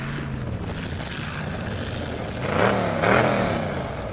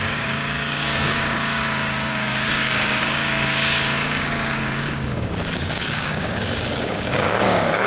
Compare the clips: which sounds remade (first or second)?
second